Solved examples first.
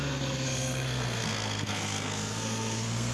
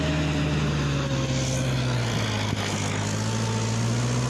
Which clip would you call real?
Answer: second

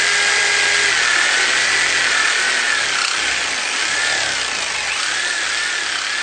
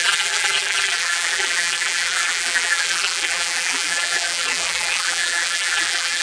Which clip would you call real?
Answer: first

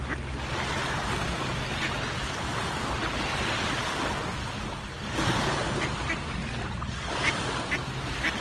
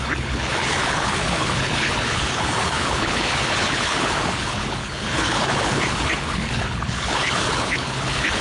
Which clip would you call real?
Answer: first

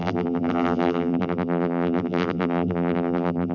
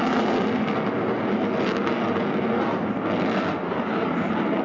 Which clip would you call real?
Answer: second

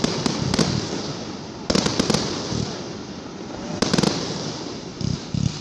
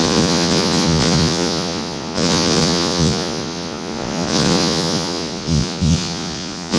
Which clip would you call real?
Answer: first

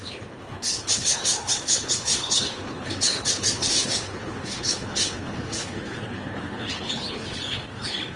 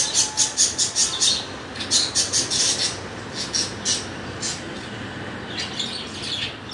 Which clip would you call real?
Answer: second